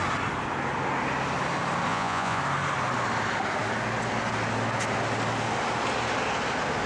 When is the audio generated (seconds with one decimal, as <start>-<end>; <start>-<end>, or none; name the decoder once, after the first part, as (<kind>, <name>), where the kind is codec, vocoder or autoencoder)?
1.9-2.4 (vocoder, Vocos)